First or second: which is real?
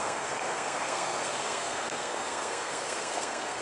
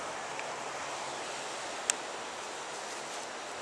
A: second